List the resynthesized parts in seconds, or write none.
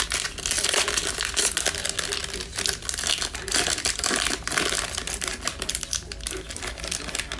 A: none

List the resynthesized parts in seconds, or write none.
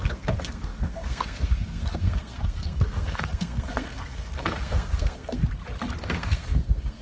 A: 0.0-5.4; 6.0-7.0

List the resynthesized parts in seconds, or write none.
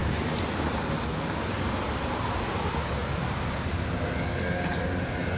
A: 0.0-3.0; 5.0-5.4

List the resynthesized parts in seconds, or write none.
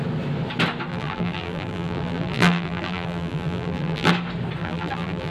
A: 0.9-4.1; 4.6-5.3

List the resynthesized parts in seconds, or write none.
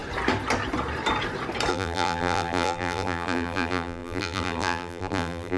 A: 1.7-5.6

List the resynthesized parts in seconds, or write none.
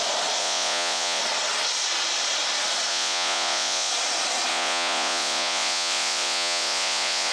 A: 0.4-1.2; 2.9-3.9; 4.5-7.3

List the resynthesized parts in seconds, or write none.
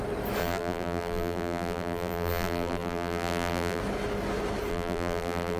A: 0.4-3.8; 4.7-5.6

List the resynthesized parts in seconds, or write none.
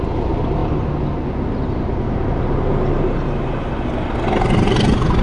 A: none